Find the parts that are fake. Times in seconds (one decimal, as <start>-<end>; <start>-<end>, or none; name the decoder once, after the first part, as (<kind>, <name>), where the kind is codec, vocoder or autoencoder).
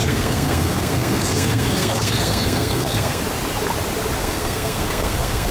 0.0-3.2 (codec, SNAC); 4.2-5.5